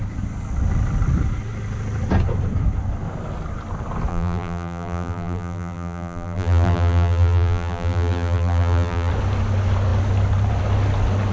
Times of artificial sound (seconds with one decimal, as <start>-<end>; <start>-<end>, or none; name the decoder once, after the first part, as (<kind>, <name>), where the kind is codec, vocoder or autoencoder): 4.1-9.1 (vocoder, BigVGAN v2)

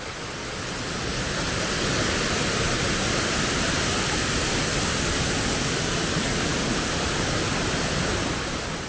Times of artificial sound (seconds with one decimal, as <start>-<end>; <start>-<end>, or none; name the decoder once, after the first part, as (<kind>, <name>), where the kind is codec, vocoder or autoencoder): 1.1-4.8 (vocoder, BigVGAN v2); 6.5-8.9

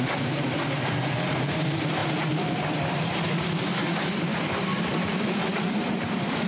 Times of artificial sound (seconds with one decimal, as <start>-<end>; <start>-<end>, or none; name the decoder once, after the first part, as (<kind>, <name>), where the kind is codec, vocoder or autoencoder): 0.0-4.3 (vocoder, BigVGAN v2); 5.9-6.5

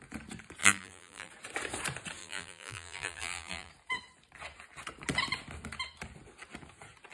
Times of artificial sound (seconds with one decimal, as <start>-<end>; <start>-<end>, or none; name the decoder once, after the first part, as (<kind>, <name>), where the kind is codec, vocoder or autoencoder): 0.6-1.3 (vocoder, BigVGAN v2); 2.2-3.7

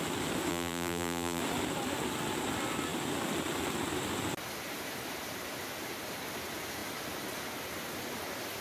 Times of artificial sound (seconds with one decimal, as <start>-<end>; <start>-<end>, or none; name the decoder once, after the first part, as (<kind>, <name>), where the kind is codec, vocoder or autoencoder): 0.5-1.4 (vocoder, BigVGAN v2)

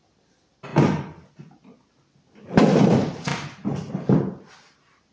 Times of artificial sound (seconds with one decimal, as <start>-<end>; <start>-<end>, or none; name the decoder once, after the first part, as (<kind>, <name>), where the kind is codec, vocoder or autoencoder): none

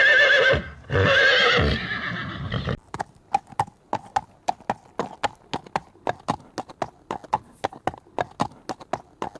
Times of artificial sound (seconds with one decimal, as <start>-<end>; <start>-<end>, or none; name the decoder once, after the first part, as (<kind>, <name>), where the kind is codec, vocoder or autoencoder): 2.2-3.2 (vocoder, BigVGAN v2)

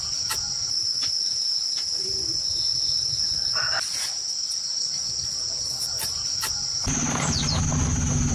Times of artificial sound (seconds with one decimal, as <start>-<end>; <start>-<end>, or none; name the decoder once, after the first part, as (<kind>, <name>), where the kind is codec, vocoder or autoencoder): 1.6-2.2 (vocoder, BigVGAN v2)